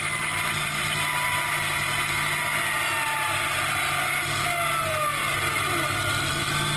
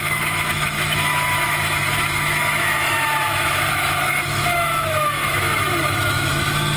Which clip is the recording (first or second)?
first